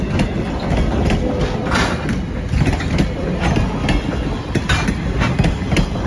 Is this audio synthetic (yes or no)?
no